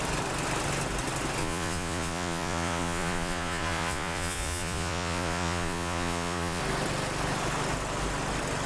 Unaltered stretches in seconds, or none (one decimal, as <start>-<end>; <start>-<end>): 0.0-1.4; 6.6-8.7